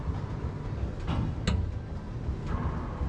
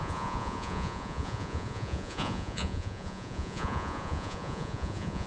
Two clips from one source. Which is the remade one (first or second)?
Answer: second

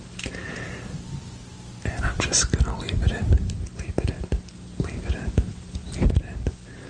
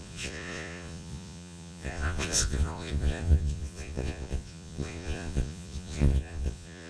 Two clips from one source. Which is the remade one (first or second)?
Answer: second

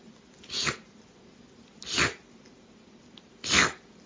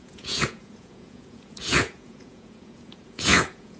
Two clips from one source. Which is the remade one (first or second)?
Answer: second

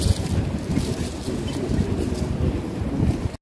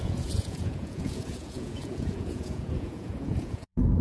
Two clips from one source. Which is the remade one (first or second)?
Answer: second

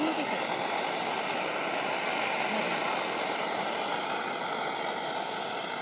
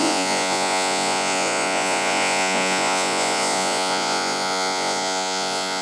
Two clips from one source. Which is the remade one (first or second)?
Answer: second